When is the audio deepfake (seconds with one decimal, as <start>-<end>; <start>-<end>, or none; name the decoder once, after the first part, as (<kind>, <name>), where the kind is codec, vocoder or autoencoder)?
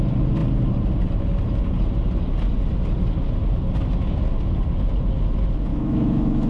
5.7-6.5 (autoencoder, DAC-VAE)